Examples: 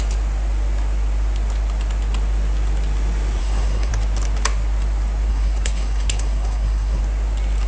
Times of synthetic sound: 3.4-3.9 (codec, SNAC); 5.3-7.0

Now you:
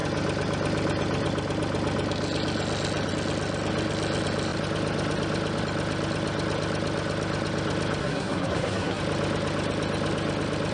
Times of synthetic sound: 8.0-9.0 (codec, SNAC)

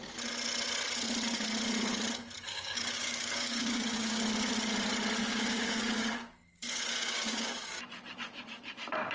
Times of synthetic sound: 2.5-4.2 (codec, DAC); 5.2-7.8

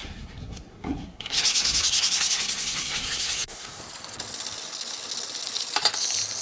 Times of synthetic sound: 0.0-3.8 (codec, SNAC)

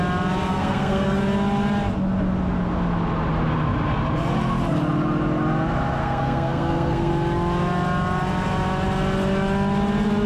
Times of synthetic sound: 0.5-1.2 (codec, SNAC); 6.0-7.1

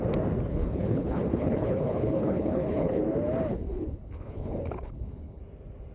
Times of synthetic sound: 0.5-3.0 (codec, HILCodec); 3.5-5.4

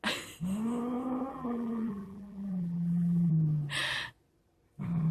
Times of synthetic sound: 1.3-3.3 (vocoder, BigVGAN v2)